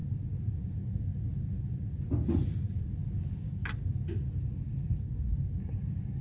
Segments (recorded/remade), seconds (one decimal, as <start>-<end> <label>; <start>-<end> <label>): 0.0-6.2 recorded